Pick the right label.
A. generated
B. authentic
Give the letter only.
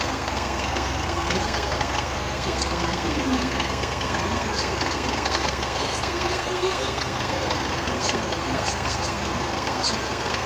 A